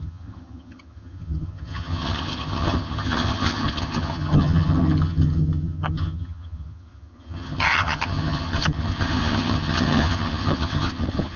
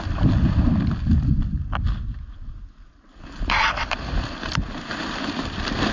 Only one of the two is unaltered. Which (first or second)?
second